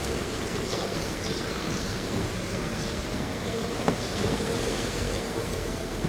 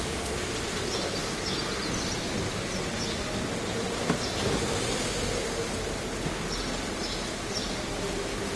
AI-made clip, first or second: first